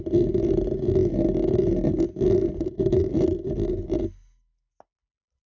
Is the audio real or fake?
real